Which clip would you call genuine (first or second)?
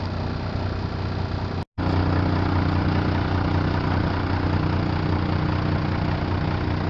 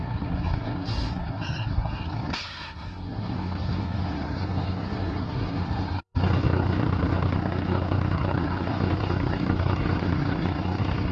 first